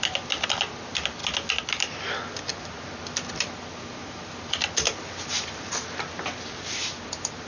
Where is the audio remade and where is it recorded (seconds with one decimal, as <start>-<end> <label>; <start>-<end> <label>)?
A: 0.0-7.5 recorded